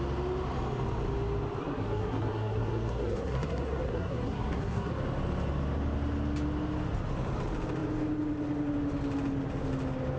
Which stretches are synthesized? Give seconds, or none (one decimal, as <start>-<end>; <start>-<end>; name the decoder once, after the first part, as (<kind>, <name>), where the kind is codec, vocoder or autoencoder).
1.6-4.9 (codec, SNAC)